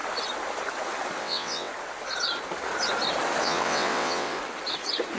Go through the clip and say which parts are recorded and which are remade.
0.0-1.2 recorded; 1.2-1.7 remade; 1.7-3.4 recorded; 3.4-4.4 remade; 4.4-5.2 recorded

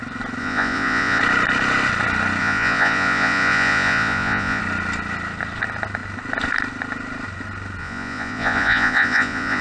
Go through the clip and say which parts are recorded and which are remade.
0.0-0.4 recorded; 0.4-1.2 remade; 1.2-2.4 recorded; 2.4-4.6 remade; 4.6-7.8 recorded; 7.8-9.6 remade